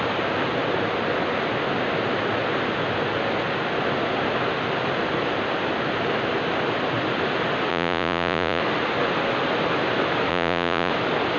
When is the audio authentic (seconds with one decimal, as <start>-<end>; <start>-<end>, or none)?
0.0-7.7; 8.6-10.3; 10.9-11.4